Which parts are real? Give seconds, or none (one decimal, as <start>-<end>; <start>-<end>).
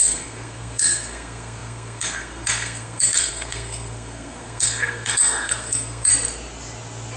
6.1-7.2